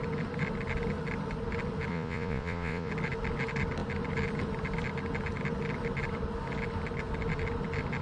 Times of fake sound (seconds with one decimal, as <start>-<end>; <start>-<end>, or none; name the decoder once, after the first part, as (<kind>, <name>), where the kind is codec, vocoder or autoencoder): 1.9-2.9 (vocoder, Vocos)